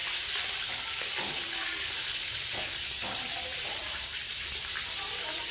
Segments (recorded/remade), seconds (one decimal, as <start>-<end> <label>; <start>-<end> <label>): 0.0-3.5 recorded; 3.5-4.6 remade; 4.6-5.5 recorded